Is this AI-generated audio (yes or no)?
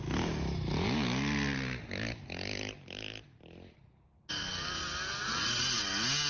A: no